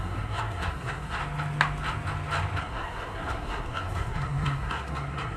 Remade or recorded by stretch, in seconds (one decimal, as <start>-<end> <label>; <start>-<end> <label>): 0.0-1.2 remade; 1.2-2.6 recorded; 2.6-5.4 remade